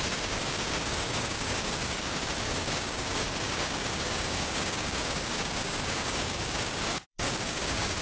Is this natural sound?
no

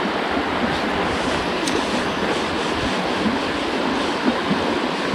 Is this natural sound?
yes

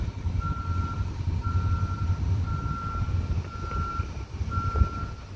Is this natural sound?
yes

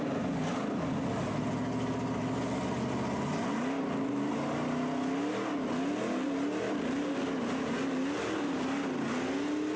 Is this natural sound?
yes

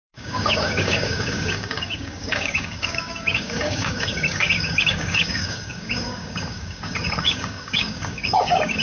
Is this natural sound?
no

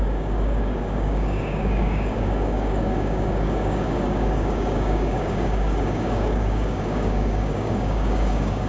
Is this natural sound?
no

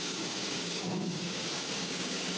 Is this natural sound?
no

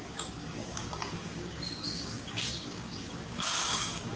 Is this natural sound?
no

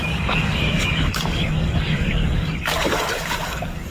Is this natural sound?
no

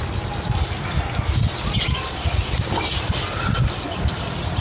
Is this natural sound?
yes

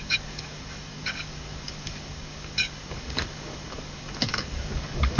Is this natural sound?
no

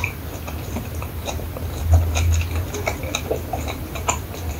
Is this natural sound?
yes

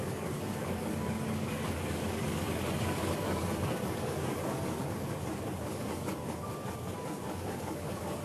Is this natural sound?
no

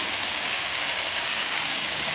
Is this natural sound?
no